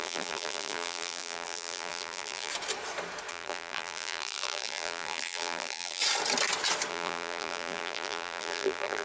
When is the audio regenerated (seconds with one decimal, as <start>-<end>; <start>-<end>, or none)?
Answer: 0.0-2.5; 3.3-6.0; 6.9-9.0